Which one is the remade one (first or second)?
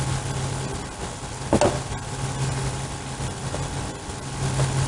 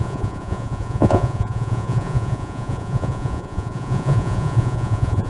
second